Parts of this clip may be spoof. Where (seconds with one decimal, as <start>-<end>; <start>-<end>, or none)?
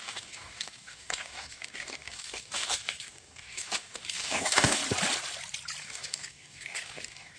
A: 0.0-4.8; 5.8-7.4